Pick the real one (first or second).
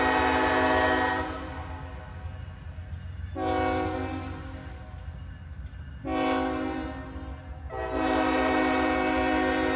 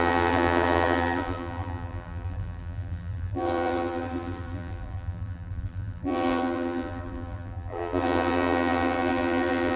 first